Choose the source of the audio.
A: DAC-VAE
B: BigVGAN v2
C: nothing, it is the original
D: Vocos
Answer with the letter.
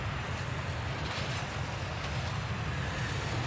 C